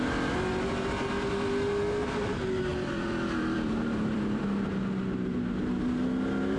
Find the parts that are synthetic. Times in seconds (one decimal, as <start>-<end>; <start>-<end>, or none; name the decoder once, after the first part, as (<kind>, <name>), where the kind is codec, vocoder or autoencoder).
2.7-4.4 (vocoder, BigVGAN v2)